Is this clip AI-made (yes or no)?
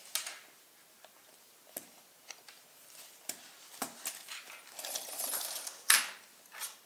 no